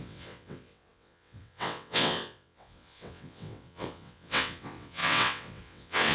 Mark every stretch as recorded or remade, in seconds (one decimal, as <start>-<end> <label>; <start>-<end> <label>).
0.0-6.1 remade

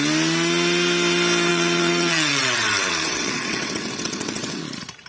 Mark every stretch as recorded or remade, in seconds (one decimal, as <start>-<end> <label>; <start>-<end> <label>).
0.0-1.5 recorded; 1.5-4.6 remade; 4.6-5.1 recorded

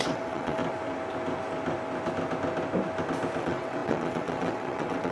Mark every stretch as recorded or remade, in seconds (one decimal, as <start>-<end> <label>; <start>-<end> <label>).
0.0-0.6 remade; 0.6-3.4 recorded; 3.4-5.1 remade

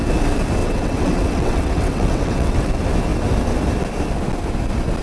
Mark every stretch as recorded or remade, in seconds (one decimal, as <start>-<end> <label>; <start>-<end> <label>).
0.0-0.6 recorded; 0.6-2.7 remade; 2.7-5.0 recorded

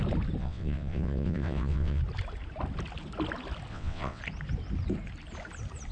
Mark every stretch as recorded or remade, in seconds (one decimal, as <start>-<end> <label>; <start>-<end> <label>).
0.0-0.4 recorded; 0.4-2.0 remade; 2.0-3.7 recorded; 3.7-4.2 remade; 4.2-5.9 recorded